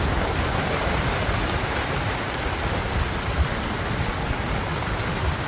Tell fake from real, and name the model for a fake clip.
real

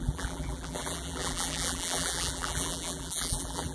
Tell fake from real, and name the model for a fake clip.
fake, vocoder, BigVGAN v2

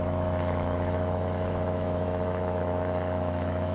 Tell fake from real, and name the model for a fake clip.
fake, autoencoder, DAC-VAE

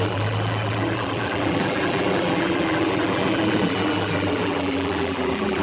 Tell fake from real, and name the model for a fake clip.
fake, vocoder, BigVGAN v2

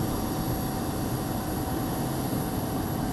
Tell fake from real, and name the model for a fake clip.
real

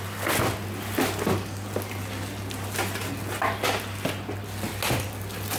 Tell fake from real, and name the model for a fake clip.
real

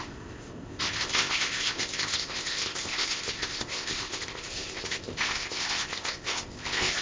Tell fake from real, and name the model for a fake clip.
fake, codec, ZipCodec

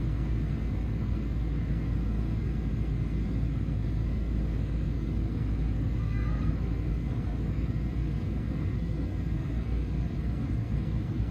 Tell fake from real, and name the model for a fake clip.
fake, codec, SNAC